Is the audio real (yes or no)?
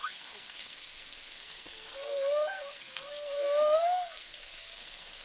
no